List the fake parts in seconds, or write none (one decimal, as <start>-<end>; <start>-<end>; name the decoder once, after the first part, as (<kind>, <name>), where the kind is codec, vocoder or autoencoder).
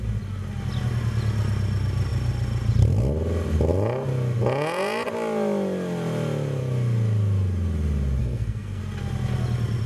8.2-8.8 (codec, SNAC)